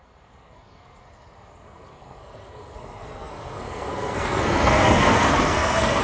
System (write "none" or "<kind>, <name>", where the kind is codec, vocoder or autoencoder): codec, SNAC